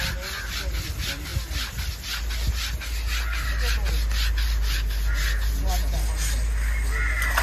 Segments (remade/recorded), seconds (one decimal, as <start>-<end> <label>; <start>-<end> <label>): 0.0-7.4 recorded